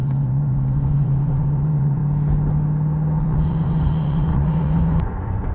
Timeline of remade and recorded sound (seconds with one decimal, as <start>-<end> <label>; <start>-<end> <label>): 0.0-2.0 remade; 2.0-3.2 recorded; 3.2-5.5 remade